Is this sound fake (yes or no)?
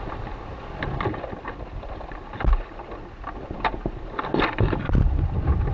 no